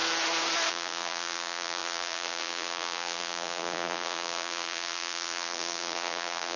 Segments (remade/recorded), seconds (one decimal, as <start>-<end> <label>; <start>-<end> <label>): 0.0-0.7 recorded; 0.7-6.6 remade